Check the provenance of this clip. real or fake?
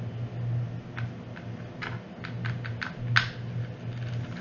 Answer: real